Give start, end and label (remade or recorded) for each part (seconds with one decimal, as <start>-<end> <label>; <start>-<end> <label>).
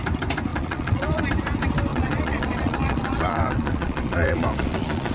0.0-0.5 recorded; 0.5-1.2 remade; 1.2-1.9 recorded; 1.9-5.1 remade